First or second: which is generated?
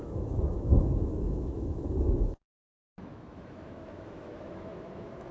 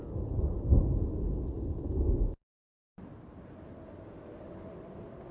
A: first